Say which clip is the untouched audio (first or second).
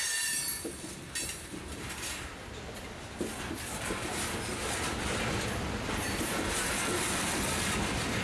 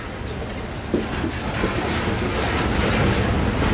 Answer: second